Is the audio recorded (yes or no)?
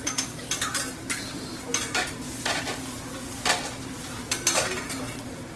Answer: yes